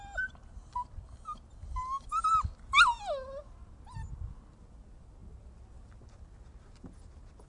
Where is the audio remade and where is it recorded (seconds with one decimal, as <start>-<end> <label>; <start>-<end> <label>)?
0.0-7.5 recorded